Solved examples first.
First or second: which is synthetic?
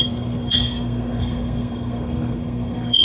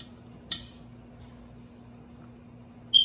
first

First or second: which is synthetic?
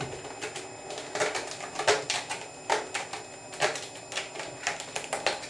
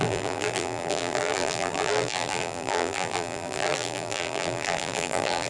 second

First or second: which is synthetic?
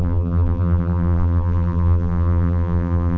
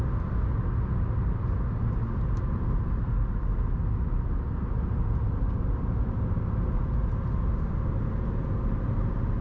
first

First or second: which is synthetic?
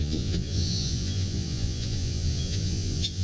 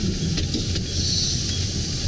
first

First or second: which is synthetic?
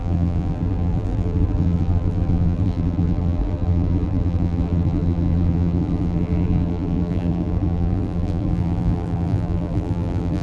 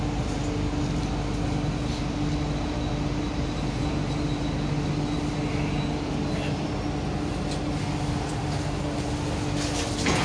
first